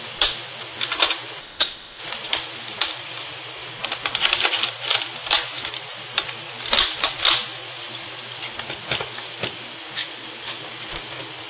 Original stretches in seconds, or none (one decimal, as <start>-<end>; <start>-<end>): 0.0-1.4; 2.0-11.5